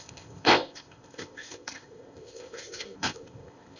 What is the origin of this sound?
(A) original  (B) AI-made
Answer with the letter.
B